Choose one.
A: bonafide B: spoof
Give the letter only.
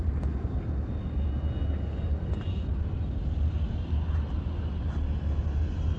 A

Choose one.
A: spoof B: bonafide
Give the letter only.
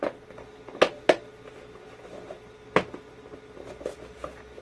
B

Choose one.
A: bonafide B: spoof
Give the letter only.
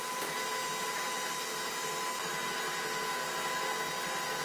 A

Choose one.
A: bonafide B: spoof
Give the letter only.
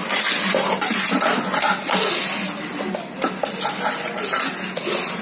A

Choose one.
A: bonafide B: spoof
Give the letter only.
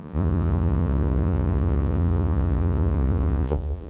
B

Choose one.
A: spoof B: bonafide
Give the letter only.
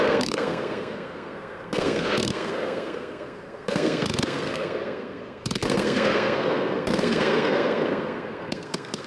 A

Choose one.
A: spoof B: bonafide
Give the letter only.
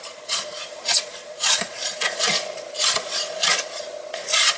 A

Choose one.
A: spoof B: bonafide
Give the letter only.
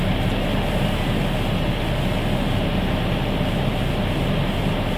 B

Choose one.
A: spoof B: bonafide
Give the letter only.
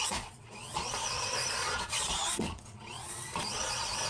A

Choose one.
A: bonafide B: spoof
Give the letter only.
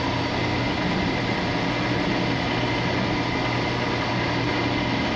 A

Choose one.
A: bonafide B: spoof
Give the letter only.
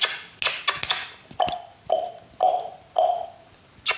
A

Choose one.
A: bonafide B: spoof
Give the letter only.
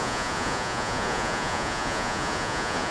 B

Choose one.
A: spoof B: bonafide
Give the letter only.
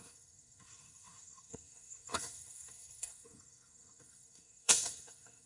A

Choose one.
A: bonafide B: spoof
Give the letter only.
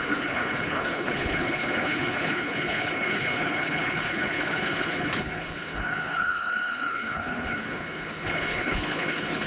B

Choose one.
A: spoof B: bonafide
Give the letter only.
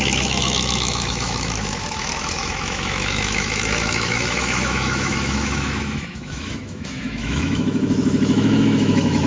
A